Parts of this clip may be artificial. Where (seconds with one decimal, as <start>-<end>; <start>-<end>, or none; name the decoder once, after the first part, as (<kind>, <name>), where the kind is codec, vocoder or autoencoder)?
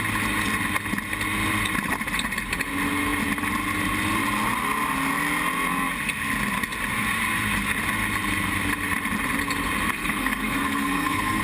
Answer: 9.9-11.4 (codec, SNAC)